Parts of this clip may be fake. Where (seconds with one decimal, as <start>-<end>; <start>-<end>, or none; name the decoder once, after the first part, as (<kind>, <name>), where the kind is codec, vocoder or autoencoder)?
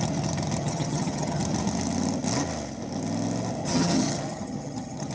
0.6-1.4 (vocoder, HiFi-GAN); 3.6-5.1